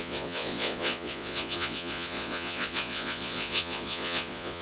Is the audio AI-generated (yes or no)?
yes